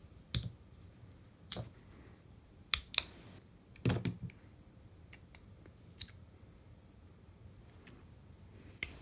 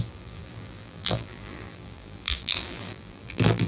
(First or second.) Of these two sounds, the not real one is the second